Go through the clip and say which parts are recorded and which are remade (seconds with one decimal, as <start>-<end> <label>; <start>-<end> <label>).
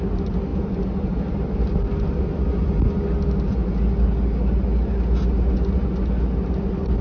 0.0-7.0 recorded